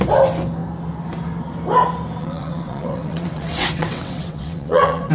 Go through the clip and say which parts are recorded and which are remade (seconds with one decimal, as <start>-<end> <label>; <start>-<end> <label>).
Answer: 0.0-2.2 recorded; 2.2-5.1 remade